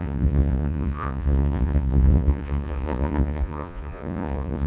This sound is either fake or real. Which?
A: fake